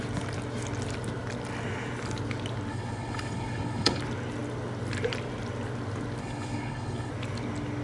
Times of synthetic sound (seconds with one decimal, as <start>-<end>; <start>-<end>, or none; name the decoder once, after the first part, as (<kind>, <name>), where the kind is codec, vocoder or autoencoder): 2.7-4.0 (codec, HILCodec); 6.2-7.1